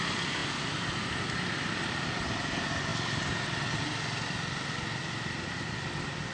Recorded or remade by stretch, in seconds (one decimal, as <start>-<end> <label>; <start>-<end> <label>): 0.0-6.3 recorded